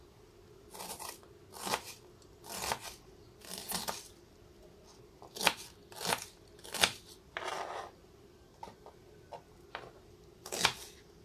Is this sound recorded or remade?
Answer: recorded